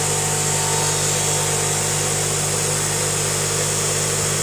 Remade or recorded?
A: recorded